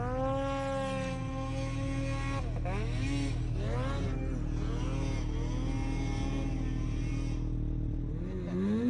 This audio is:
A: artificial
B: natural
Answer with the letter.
B